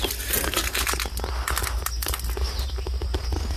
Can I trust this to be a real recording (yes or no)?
yes